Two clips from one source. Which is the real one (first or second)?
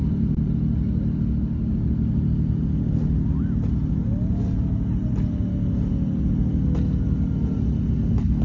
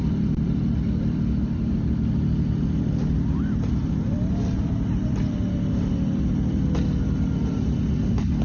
first